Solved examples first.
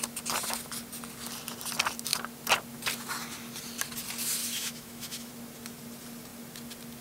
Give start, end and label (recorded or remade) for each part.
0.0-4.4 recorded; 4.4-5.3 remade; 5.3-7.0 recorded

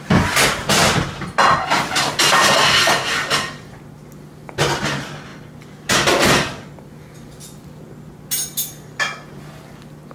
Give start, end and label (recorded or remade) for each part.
0.0-10.1 recorded

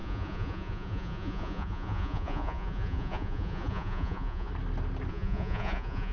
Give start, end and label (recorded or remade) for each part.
0.0-4.5 remade; 4.5-5.1 recorded; 5.1-6.1 remade

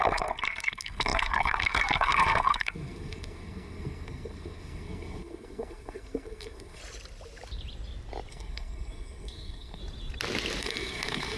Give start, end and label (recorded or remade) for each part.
0.0-6.8 remade; 6.8-8.3 recorded; 8.3-9.8 remade; 9.8-10.6 recorded; 10.6-11.4 remade

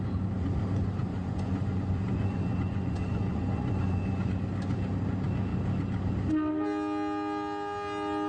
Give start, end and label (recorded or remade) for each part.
0.0-1.1 recorded; 1.1-4.3 remade; 4.3-8.3 recorded

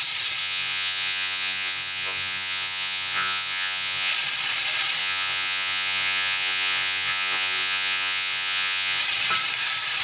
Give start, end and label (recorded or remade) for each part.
0.0-0.4 recorded; 0.4-4.1 remade; 4.1-5.0 recorded; 5.0-9.0 remade; 9.0-10.0 recorded

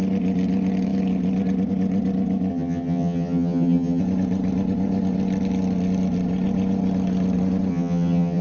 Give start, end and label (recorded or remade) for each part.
0.0-2.5 recorded; 2.5-4.0 remade; 4.0-7.7 recorded; 7.7-8.4 remade

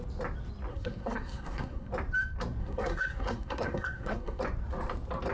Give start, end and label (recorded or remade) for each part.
0.0-0.7 recorded; 0.7-1.9 remade; 1.9-2.6 recorded; 2.6-4.4 remade; 4.4-5.3 recorded